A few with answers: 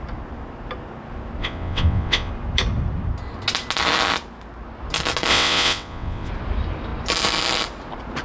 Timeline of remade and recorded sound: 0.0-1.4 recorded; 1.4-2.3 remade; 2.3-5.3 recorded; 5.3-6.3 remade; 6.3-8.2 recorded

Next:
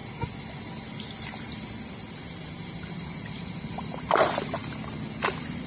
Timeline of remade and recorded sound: 0.0-5.7 recorded

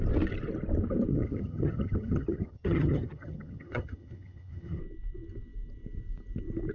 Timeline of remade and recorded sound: 0.0-1.1 recorded; 1.1-4.8 remade; 4.8-6.7 recorded

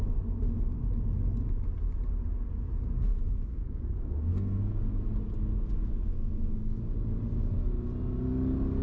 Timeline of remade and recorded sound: 0.0-3.5 recorded; 3.5-4.8 remade; 4.8-5.9 recorded; 5.9-6.8 remade; 6.8-8.8 recorded

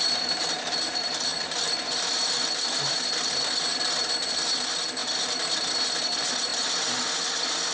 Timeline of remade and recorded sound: 0.0-1.3 recorded; 1.3-4.0 remade; 4.0-6.5 recorded; 6.5-7.1 remade; 7.1-7.7 recorded